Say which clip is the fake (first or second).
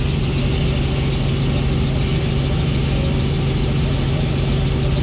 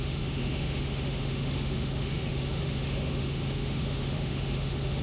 second